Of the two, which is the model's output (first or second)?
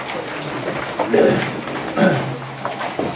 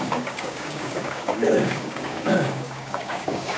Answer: second